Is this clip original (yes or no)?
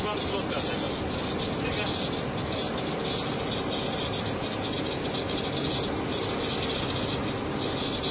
yes